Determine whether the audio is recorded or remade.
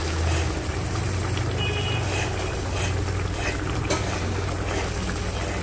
recorded